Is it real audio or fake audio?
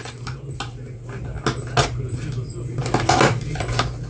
real